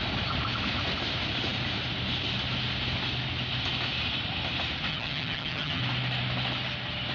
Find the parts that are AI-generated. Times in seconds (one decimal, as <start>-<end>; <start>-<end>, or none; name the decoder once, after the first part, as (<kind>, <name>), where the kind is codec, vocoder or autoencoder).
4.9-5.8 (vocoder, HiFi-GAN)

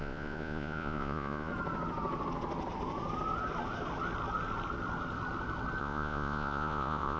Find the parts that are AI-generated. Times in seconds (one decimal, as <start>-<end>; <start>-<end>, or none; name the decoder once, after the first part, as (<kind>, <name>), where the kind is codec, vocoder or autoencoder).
0.0-1.5 (vocoder, Vocos); 5.8-7.2

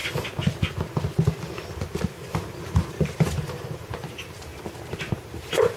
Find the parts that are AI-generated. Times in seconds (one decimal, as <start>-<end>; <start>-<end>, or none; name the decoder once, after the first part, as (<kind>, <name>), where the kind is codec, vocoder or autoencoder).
2.0-4.5 (vocoder, BigVGAN v2); 5.1-5.8

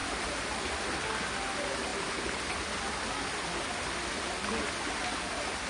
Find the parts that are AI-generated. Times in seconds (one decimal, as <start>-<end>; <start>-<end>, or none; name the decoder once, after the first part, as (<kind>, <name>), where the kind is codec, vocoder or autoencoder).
0.0-0.7 (vocoder, BigVGAN v2)

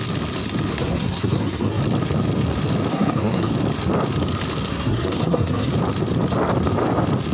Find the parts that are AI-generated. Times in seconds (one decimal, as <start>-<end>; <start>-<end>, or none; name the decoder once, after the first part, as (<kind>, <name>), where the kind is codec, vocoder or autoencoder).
0.7-1.8 (codec, SNAC); 2.9-3.5; 4.7-5.7

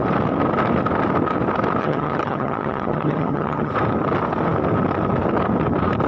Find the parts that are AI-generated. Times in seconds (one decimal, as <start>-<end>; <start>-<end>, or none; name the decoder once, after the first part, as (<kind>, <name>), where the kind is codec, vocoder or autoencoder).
1.8-3.7 (vocoder, HiFi-GAN)

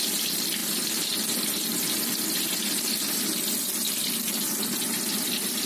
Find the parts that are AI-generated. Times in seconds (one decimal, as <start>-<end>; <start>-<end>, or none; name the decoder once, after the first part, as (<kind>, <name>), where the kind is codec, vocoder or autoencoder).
none

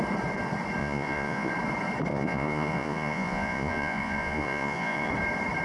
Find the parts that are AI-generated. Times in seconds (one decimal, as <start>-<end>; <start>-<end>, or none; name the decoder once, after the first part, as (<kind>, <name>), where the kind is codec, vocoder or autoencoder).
0.8-1.5 (vocoder, Vocos); 2.1-5.1